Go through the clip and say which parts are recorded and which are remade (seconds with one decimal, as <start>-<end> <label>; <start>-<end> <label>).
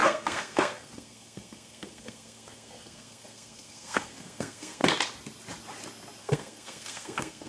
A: 0.0-4.8 remade; 4.8-6.2 recorded; 6.2-7.5 remade